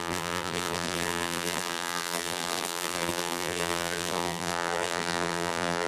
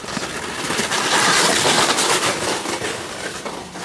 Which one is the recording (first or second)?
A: second